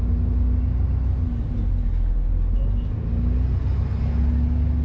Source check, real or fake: real